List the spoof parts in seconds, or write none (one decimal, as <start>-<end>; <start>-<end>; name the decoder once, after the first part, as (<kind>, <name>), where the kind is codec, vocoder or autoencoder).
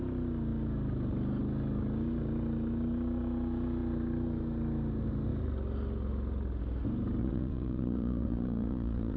7.2-9.2 (vocoder, Vocos)